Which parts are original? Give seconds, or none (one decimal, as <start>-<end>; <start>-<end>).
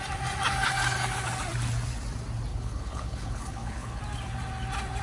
0.0-2.5; 4.0-5.0